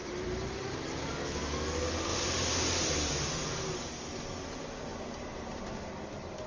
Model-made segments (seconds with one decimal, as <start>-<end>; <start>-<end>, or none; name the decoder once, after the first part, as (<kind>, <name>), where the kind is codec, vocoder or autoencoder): 0.0-0.5 (vocoder, BigVGAN v2); 4.9-5.6